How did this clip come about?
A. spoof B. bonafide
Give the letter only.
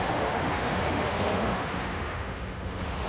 A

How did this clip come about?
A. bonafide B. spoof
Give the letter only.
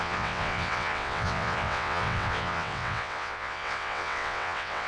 B